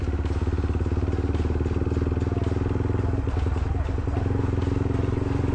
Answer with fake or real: real